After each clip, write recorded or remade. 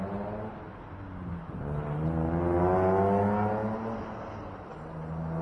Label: recorded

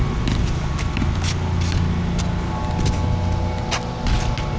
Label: recorded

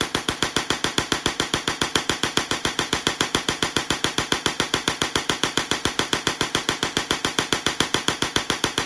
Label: remade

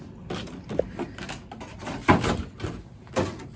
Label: recorded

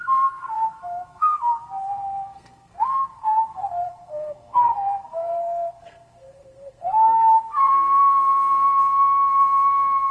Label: remade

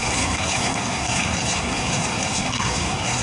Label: remade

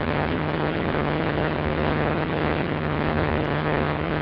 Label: remade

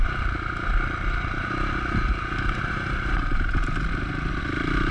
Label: recorded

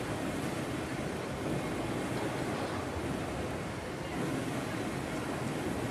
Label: recorded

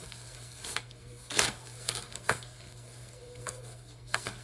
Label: remade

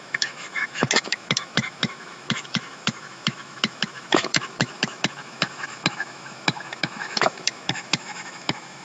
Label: remade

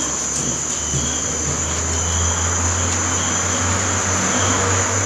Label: recorded